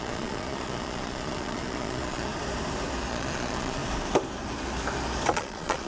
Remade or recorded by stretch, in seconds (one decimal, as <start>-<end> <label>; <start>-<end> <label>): 0.0-2.3 remade; 2.3-3.1 recorded; 3.1-3.8 remade; 3.8-5.3 recorded; 5.3-5.9 remade